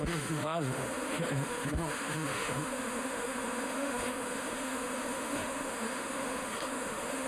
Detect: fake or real fake